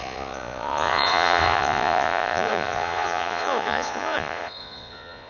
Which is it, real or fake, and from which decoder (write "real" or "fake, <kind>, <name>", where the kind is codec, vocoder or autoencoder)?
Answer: fake, vocoder, Vocos